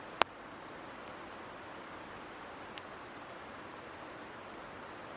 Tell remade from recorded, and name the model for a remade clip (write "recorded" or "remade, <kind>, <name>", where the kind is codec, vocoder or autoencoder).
recorded